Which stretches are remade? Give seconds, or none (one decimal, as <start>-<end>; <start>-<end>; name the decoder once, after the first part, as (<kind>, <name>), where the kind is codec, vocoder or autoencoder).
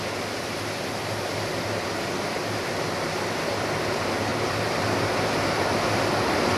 4.3-5.4 (vocoder, BigVGAN v2)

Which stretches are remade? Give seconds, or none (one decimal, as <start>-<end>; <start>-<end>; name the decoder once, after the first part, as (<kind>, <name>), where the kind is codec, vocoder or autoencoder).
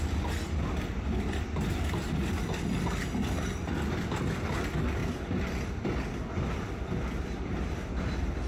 none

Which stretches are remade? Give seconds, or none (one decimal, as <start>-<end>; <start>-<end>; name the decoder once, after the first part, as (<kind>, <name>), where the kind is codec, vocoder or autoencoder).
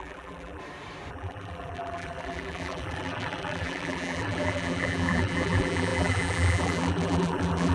0.0-0.6 (vocoder, BigVGAN v2); 1.1-7.7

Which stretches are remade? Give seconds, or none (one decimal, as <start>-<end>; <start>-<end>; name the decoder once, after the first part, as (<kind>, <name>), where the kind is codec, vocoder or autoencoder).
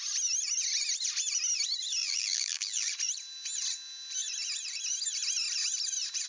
2.0-2.9 (vocoder, BigVGAN v2)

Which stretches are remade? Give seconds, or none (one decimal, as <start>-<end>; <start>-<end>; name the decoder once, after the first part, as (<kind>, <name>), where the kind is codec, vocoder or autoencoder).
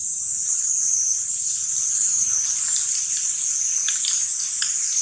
none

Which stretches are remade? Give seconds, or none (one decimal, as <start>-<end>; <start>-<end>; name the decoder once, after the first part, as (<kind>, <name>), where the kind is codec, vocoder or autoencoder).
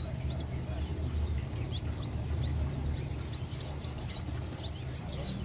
none